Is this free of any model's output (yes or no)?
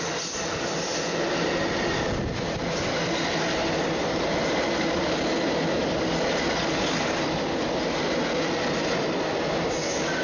yes